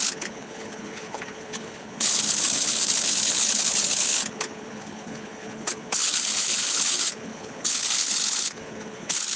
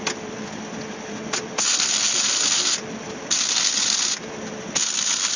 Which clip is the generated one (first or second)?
first